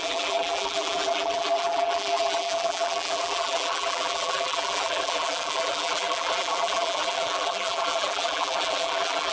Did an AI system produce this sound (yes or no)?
yes